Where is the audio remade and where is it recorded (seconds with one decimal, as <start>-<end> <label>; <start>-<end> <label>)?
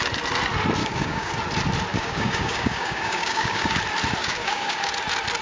0.0-0.8 recorded; 0.8-1.3 remade; 1.3-1.9 recorded; 1.9-3.8 remade; 3.8-4.2 recorded; 4.2-4.9 remade; 4.9-5.4 recorded